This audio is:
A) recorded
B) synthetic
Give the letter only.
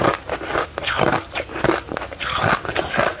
A